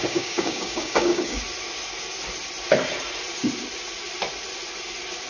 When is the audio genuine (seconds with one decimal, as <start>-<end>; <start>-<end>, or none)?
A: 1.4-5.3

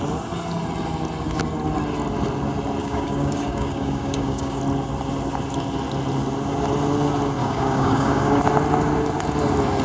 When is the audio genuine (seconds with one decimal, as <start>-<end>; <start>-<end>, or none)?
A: 0.0-2.8; 4.6-7.4; 8.4-9.8

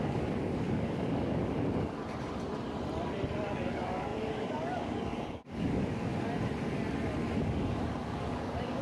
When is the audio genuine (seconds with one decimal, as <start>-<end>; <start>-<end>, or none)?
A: 2.0-3.5; 6.1-7.4

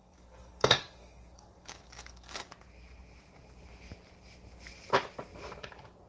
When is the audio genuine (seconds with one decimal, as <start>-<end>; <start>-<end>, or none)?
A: 2.5-6.1